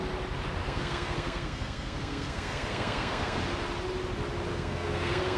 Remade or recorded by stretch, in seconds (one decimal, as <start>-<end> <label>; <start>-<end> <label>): 0.0-0.6 recorded; 0.6-3.4 remade; 3.4-4.5 recorded; 4.5-5.4 remade